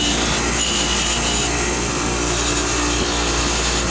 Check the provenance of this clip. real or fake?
real